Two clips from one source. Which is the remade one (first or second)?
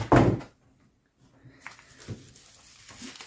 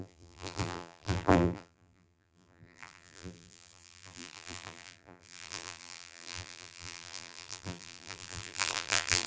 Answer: second